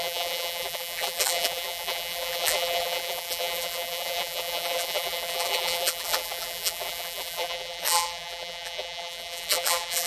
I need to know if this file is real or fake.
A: fake